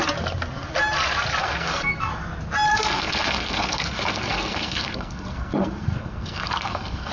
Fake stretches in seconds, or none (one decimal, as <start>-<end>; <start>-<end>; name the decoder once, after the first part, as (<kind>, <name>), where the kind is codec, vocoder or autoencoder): 1.4-2.1 (codec, SNAC); 2.7-7.1